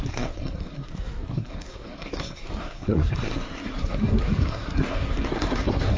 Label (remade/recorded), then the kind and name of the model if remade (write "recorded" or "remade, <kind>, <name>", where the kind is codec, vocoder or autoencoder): remade, codec, SNAC